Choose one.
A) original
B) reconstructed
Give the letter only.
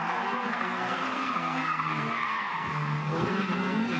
B